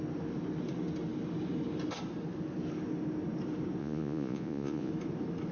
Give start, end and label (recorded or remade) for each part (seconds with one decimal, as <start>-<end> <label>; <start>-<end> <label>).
0.0-3.8 recorded; 3.8-4.9 remade; 4.9-5.5 recorded